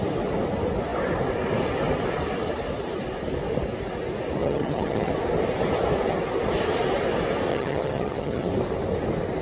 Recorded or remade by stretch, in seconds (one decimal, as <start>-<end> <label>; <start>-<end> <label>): 0.0-4.4 recorded; 4.4-5.1 remade; 5.1-7.5 recorded; 7.5-8.5 remade; 8.5-9.4 recorded